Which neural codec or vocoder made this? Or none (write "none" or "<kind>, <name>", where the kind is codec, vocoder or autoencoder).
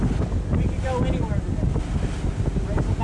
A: none